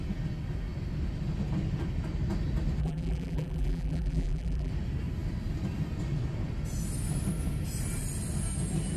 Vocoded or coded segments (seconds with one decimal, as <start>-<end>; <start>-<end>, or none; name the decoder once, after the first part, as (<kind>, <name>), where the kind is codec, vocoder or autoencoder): 2.8-4.7 (vocoder, BigVGAN v2)